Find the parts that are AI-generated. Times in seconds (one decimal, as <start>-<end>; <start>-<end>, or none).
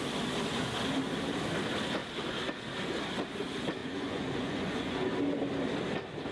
3.8-5.1